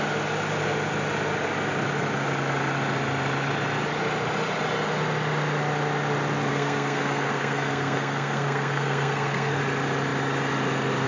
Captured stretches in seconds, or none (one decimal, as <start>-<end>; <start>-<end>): 0.0-6.5; 9.6-11.1